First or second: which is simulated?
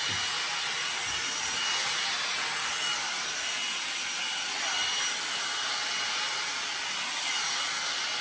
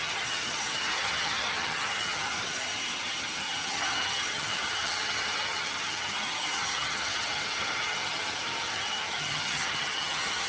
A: second